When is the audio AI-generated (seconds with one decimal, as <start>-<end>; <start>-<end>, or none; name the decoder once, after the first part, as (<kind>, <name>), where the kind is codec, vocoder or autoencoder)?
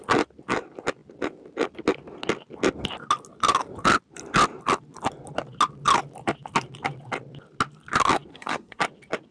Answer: 8.3-8.8 (codec, SNAC)